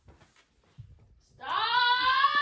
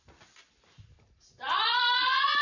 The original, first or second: first